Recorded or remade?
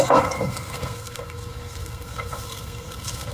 remade